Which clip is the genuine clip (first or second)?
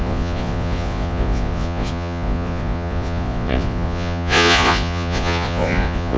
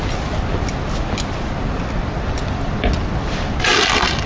second